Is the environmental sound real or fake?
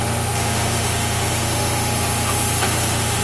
fake